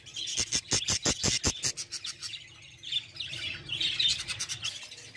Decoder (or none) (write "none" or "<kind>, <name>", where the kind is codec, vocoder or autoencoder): none